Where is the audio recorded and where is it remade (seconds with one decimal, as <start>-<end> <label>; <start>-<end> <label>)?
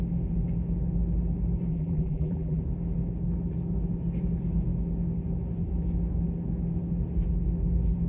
0.0-1.7 recorded; 1.7-2.6 remade; 2.6-8.1 recorded